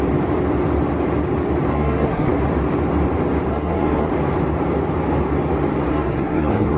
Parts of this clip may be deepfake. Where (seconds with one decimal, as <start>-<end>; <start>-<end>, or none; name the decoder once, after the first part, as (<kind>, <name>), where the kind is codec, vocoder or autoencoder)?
1.7-2.3 (codec, SNAC); 3.5-4.1; 5.9-6.8